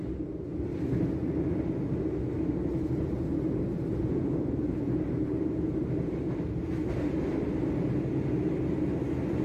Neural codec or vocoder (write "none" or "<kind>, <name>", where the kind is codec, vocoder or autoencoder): none